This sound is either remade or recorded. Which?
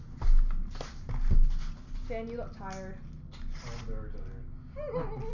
recorded